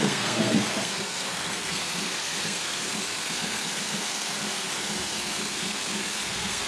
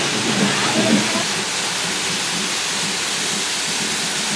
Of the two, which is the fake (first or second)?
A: first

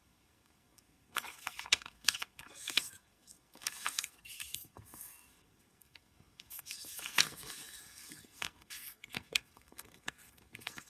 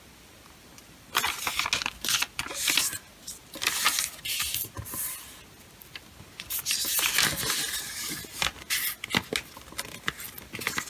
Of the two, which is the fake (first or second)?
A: first